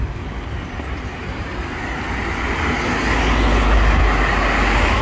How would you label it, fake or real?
real